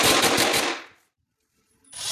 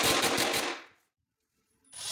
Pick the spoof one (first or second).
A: first